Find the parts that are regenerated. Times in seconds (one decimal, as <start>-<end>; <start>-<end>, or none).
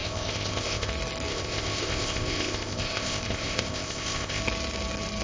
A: 0.0-0.9; 1.3-4.4